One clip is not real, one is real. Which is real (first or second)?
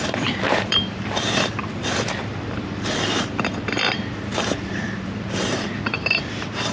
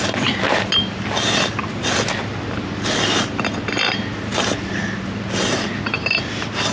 second